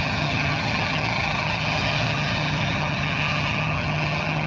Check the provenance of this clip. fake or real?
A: fake